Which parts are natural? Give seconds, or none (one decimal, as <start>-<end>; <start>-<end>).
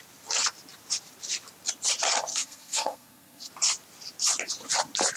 0.0-2.3; 3.5-5.2